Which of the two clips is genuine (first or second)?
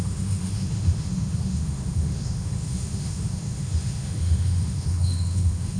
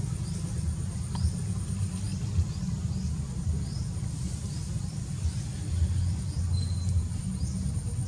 second